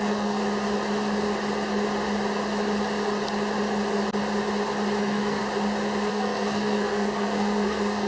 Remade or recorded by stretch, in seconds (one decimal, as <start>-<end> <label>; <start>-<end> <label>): 0.0-0.4 remade; 0.4-5.0 recorded; 5.0-5.4 remade; 5.4-6.1 recorded; 6.1-8.1 remade